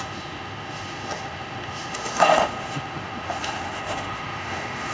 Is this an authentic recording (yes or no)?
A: no